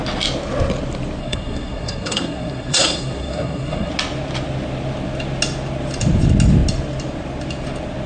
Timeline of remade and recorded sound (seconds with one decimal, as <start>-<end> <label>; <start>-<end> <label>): 0.0-1.2 recorded; 1.2-3.9 remade; 3.9-8.1 recorded